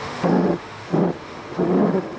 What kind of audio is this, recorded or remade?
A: remade